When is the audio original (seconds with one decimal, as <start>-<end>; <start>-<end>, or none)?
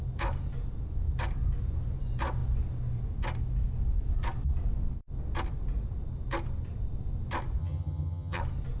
0.0-7.6; 8.4-8.8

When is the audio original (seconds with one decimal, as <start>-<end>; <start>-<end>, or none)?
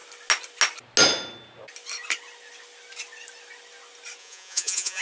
0.0-4.2